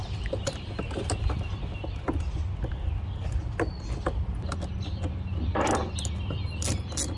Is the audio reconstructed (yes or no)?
no